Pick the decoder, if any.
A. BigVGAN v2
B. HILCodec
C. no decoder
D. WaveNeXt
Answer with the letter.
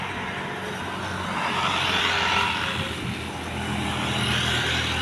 C